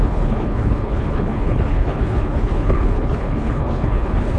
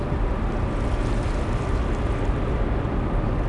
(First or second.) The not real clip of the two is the first